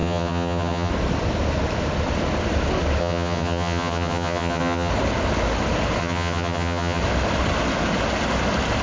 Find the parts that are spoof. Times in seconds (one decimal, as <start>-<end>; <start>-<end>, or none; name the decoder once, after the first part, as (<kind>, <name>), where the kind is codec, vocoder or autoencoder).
0.0-0.9 (vocoder, HiFi-GAN); 3.0-4.9; 6.0-7.0